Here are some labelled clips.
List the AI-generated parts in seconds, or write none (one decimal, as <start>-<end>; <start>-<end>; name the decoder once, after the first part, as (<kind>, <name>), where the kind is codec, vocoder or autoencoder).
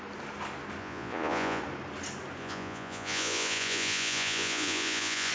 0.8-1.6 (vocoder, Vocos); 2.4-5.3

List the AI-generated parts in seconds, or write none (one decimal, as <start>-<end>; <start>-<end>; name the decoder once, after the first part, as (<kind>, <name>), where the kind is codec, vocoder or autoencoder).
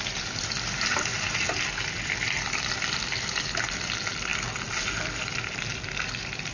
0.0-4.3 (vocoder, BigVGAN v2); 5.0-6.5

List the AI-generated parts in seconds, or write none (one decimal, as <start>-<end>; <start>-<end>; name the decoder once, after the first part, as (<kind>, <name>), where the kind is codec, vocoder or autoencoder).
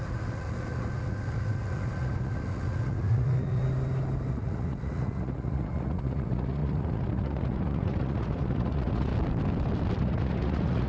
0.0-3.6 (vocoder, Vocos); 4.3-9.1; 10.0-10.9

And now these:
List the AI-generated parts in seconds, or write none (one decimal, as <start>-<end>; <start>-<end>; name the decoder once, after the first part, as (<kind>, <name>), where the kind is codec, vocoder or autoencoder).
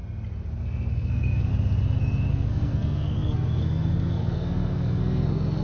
0.9-1.5 (codec, SNAC); 2.3-5.6